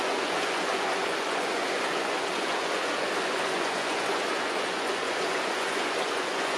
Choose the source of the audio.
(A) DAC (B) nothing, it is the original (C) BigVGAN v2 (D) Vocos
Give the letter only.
D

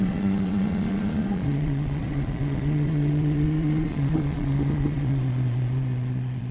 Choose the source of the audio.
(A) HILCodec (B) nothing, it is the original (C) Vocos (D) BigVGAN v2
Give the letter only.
C